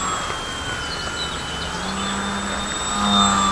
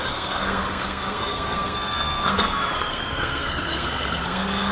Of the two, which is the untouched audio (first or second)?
first